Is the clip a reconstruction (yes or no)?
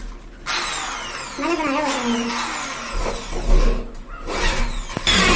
no